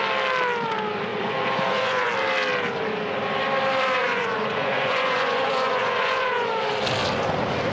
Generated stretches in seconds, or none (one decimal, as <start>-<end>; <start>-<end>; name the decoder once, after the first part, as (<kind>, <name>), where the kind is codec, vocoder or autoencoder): 1.1-2.1 (vocoder, Vocos); 4.0-6.7